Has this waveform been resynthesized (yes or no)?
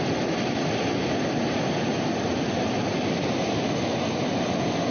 no